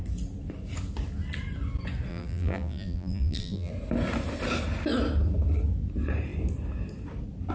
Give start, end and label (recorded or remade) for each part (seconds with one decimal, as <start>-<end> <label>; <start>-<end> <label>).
0.0-2.1 recorded; 2.1-3.7 remade; 3.7-7.5 recorded